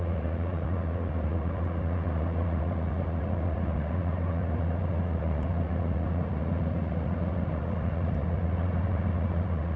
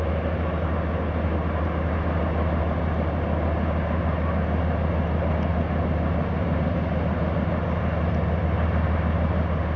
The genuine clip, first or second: second